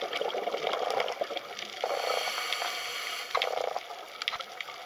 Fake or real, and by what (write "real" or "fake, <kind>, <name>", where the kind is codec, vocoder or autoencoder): real